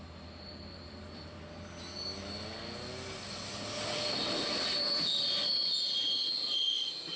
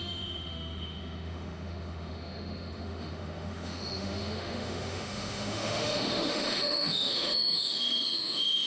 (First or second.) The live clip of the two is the first